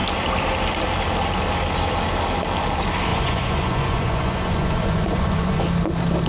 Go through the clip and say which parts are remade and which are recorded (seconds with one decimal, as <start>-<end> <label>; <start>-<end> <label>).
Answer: 0.0-3.1 recorded; 3.1-5.6 remade; 5.6-6.3 recorded